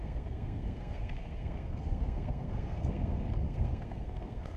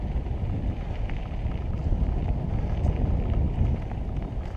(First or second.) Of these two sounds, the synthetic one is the first